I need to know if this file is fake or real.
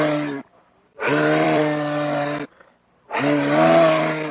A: fake